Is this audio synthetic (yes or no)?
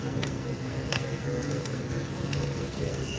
yes